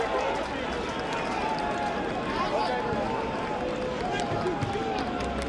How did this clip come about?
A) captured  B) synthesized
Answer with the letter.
A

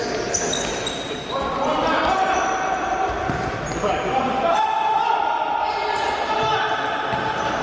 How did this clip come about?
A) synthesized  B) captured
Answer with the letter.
B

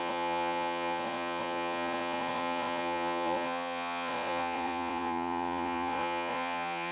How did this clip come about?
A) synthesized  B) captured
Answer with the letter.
A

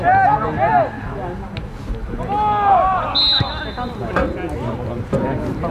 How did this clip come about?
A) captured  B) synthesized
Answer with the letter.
A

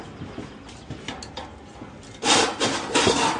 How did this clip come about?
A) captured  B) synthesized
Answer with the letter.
A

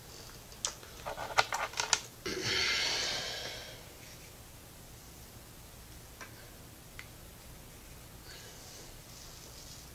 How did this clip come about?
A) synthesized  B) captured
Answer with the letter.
B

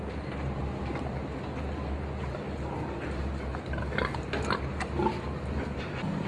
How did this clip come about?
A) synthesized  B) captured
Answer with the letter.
B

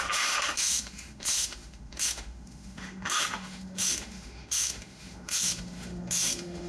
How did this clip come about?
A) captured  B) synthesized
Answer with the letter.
B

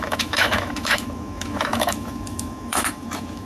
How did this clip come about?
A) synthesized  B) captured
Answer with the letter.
A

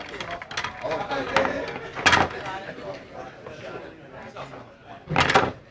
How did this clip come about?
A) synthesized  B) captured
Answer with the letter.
B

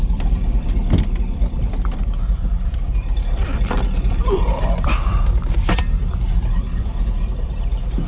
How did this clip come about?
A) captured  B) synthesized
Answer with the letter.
B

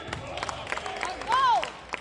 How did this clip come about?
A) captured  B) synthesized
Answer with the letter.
A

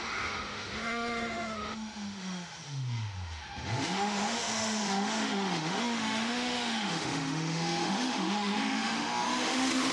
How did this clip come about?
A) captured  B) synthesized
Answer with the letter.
B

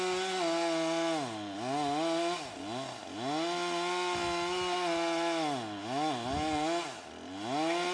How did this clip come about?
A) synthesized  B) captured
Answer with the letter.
B